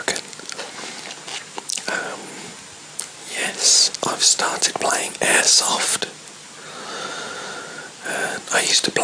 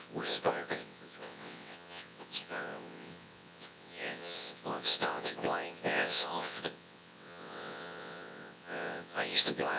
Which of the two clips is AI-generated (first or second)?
second